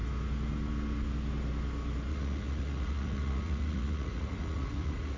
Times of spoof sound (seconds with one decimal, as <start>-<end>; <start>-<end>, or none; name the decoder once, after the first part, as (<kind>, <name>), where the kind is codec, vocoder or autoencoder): 2.1-5.2 (vocoder, Vocos)